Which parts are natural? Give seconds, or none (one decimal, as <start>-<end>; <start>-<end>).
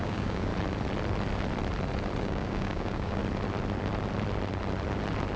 0.5-2.2; 3.2-5.4